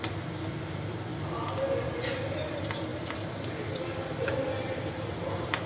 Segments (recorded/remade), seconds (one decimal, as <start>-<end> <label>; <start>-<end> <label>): 0.0-1.1 recorded; 1.1-1.6 remade; 1.6-2.9 recorded; 2.9-4.3 remade; 4.3-5.7 recorded